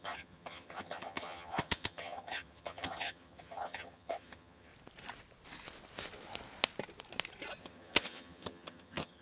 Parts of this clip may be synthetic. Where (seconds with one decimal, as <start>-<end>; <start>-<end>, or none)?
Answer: 0.0-4.7; 7.6-9.2